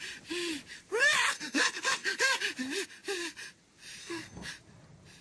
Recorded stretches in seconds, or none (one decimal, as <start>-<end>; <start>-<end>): 0.0-1.3; 2.4-4.0; 4.5-5.2